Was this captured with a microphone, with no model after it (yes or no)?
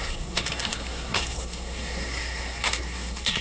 no